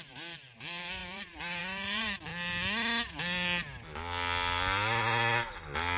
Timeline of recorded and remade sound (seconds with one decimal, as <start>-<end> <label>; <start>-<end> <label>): 0.0-2.3 remade; 2.3-6.0 recorded